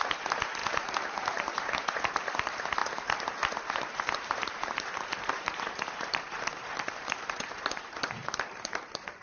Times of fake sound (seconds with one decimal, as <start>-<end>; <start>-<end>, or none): 0.0-2.8; 3.7-9.2